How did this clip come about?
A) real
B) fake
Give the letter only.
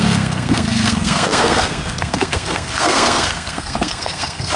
B